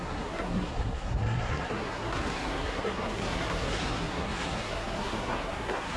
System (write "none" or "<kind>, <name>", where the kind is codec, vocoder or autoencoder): codec, SNAC